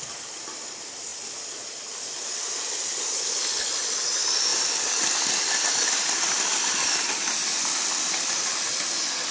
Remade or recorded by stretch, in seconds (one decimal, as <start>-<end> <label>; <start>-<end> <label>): 0.0-9.3 recorded